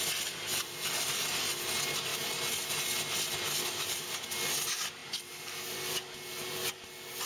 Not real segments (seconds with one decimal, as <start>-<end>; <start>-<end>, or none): 0.5-1.2